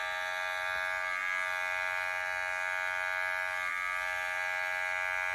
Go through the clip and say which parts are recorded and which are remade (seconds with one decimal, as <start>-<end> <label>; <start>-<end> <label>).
0.0-5.3 recorded